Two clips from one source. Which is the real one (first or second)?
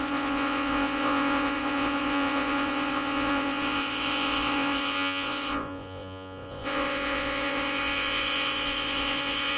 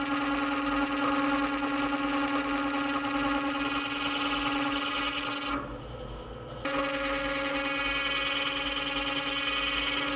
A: second